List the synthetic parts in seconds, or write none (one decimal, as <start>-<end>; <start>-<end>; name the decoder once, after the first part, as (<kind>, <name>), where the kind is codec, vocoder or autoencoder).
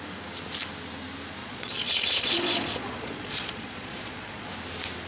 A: 1.4-4.5 (vocoder, Vocos)